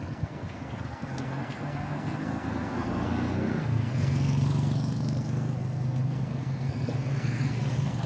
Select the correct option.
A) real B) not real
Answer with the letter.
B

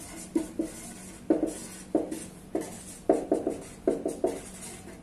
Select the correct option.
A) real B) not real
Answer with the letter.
A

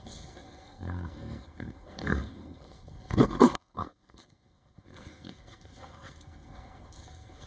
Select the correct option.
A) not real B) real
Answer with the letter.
A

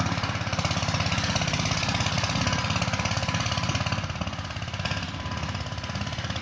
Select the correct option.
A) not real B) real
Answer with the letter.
B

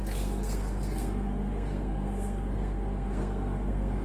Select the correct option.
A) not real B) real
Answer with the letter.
A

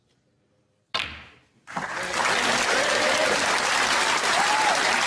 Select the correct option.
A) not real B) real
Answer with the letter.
B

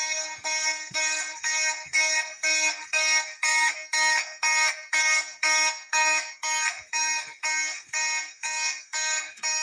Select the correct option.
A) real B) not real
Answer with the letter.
B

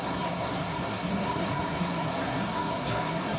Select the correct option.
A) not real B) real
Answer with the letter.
A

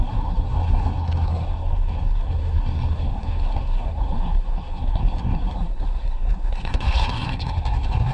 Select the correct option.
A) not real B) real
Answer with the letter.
A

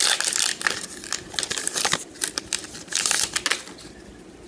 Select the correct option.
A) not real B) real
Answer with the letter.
B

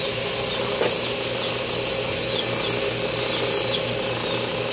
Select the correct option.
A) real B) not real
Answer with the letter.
A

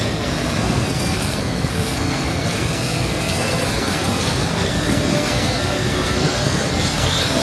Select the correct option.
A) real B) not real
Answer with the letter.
B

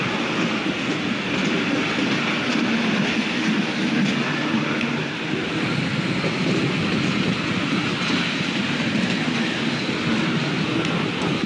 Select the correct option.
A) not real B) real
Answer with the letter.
B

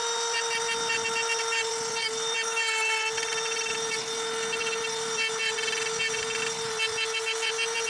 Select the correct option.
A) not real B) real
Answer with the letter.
B